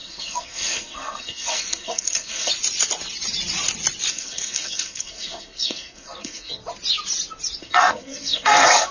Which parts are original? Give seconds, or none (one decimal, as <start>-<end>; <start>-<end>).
2.5-4.1; 6.6-7.6

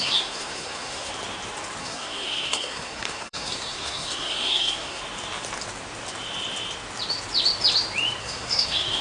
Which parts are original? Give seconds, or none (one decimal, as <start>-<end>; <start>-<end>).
1.1-1.8; 5.0-8.2

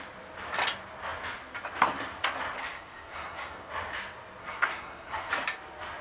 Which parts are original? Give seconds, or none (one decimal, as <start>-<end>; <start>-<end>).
0.0-2.6; 3.7-4.4; 5.3-6.0